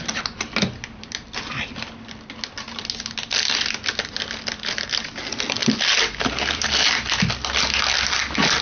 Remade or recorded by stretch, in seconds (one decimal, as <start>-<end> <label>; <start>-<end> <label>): 0.0-8.6 recorded